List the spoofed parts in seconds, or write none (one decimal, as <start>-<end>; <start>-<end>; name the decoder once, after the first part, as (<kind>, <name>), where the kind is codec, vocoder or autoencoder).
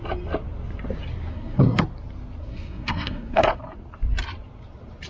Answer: 1.3-1.8 (codec, SNAC); 2.4-3.6